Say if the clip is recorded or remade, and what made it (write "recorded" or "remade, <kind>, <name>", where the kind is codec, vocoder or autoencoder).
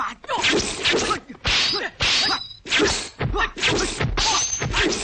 recorded